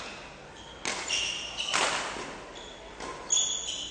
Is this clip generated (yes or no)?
no